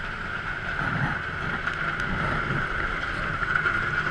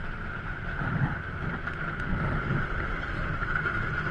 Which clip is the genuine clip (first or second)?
first